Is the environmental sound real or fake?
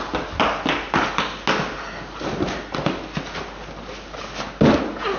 real